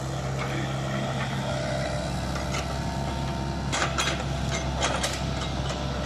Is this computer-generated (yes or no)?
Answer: no